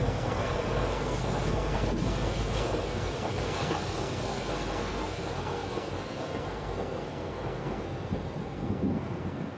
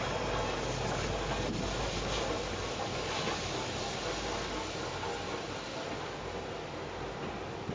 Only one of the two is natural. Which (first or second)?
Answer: second